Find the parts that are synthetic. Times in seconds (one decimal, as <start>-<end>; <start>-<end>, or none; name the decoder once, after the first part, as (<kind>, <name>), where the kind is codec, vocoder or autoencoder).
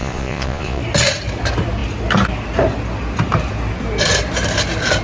0.0-0.8 (vocoder, Vocos)